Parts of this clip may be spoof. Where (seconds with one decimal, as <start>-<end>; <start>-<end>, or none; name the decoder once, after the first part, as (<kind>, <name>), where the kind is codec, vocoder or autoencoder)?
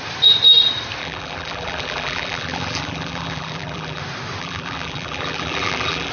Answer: 1.0-4.0 (vocoder, BigVGAN v2); 4.4-6.1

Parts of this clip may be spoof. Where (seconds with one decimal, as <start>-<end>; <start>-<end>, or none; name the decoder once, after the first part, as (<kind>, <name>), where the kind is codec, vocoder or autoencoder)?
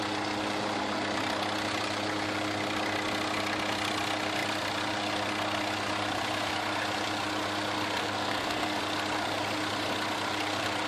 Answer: 8.0-8.8 (codec, SNAC)